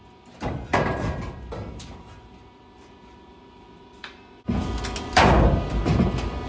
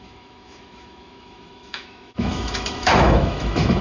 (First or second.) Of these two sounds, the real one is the first